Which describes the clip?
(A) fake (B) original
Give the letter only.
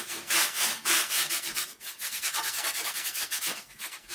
A